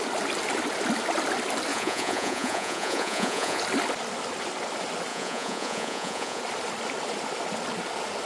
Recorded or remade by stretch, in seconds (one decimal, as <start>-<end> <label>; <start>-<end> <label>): 0.0-1.7 recorded; 1.7-3.6 remade; 3.6-5.1 recorded; 5.1-6.4 remade; 6.4-8.3 recorded